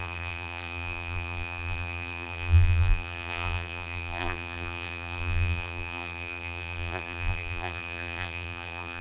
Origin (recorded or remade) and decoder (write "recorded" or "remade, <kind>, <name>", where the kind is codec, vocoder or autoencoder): remade, vocoder, BigVGAN v2